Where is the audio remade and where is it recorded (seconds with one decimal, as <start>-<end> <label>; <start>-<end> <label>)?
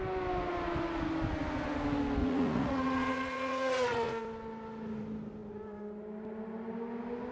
0.0-2.2 recorded; 2.2-4.2 remade; 4.2-7.3 recorded